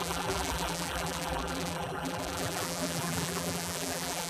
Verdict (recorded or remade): remade